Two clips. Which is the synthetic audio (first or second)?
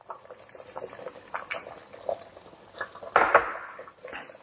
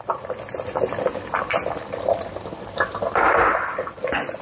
second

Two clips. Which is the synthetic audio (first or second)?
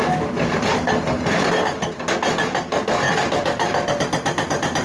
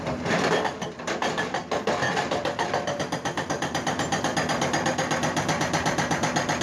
second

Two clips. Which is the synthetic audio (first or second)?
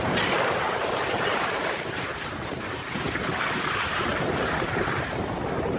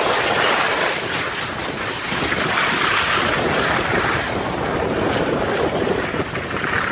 first